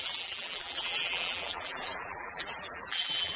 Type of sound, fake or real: fake